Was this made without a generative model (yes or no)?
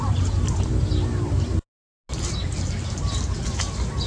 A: yes